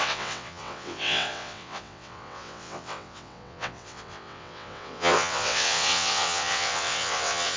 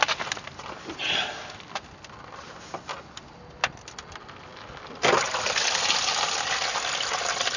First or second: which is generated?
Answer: first